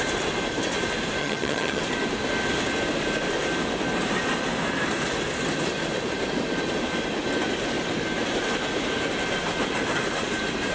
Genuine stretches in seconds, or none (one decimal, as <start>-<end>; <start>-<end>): 0.0-1.2; 1.8-10.7